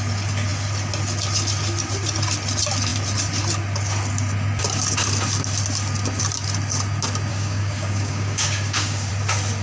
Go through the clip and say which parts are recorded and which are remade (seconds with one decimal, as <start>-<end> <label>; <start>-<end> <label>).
0.0-7.3 recorded; 7.3-9.1 remade; 9.1-9.6 recorded